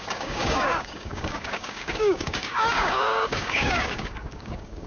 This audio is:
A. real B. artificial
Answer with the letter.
B